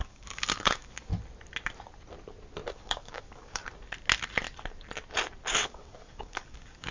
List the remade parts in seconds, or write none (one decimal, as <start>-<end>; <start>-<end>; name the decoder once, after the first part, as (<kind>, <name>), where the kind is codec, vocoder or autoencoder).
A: 0.0-1.1 (codec, DAC); 2.7-3.6; 5.5-6.9

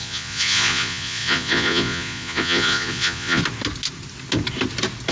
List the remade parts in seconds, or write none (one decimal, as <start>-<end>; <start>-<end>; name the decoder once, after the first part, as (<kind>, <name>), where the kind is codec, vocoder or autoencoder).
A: 0.0-3.4 (vocoder, Vocos)

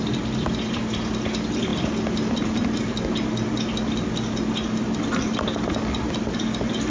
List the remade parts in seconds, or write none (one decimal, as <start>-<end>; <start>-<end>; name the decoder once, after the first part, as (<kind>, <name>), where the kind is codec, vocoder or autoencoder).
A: none